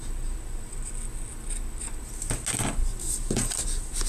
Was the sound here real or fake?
real